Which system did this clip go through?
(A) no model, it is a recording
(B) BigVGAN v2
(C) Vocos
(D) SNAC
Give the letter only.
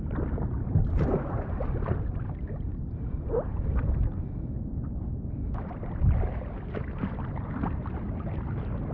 A